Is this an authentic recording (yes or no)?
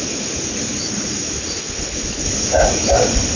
yes